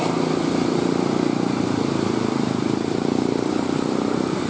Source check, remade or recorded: remade